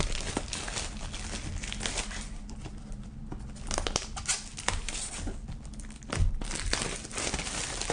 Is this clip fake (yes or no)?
no